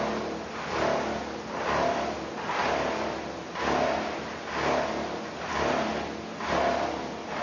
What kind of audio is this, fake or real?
real